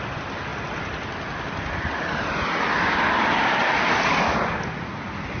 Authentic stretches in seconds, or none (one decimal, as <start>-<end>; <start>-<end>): 0.0-5.4